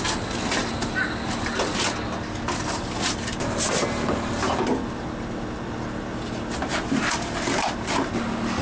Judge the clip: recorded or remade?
recorded